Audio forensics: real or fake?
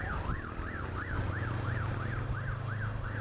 real